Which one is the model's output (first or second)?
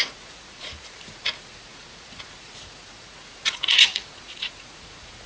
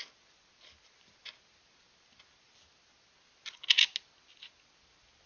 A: first